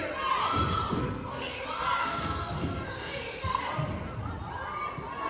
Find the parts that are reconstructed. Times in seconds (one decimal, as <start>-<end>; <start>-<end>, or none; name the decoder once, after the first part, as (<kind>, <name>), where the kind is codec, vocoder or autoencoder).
1.0-1.6 (codec, SNAC); 2.0-3.6